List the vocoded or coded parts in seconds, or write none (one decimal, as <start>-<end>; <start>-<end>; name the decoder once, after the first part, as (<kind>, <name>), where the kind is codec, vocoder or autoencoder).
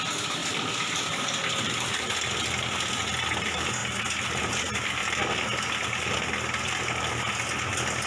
0.4-2.0 (vocoder, BigVGAN v2)